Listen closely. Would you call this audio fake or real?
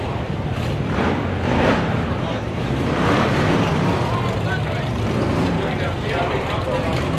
fake